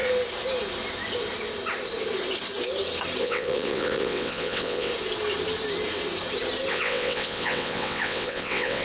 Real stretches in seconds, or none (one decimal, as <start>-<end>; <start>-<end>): 0.0-3.2; 4.9-6.7